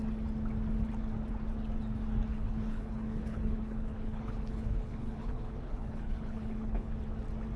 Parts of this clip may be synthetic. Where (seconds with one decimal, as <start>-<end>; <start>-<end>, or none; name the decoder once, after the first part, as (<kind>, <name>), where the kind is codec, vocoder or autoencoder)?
2.3-6.9 (codec, HILCodec)